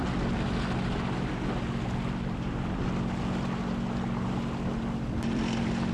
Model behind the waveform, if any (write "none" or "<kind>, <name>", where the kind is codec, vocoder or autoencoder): none